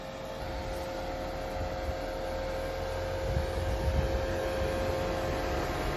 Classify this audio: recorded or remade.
recorded